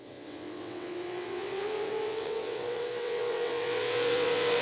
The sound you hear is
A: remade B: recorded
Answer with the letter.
A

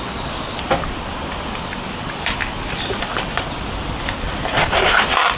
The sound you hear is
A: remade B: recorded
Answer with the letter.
B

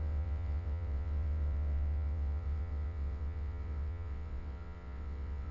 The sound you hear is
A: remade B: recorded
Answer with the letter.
A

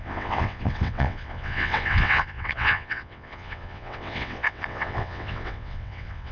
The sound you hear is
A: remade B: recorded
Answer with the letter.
A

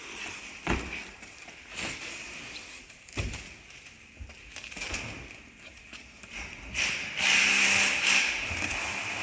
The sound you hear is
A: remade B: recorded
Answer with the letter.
B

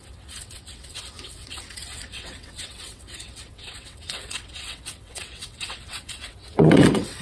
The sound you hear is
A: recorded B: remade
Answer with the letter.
B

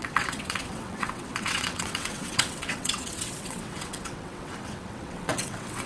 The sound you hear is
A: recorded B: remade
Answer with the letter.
B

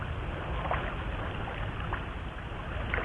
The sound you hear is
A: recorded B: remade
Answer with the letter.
A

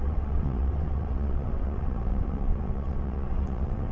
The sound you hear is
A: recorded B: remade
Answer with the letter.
B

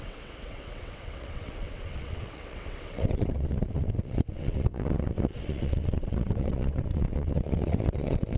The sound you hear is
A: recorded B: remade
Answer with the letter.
B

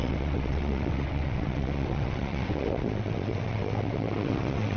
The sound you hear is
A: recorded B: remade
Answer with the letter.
B